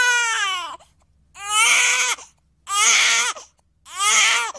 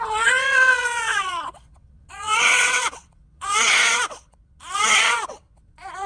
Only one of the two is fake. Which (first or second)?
second